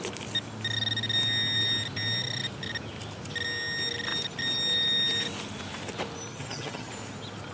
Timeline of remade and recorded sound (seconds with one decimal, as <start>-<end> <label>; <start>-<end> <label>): 0.0-6.3 recorded; 6.3-6.9 remade; 6.9-7.5 recorded